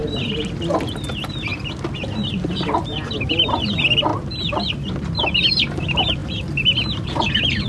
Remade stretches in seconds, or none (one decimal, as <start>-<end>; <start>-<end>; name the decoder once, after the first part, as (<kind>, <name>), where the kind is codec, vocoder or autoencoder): 0.0-4.1 (vocoder, BigVGAN v2); 5.8-7.7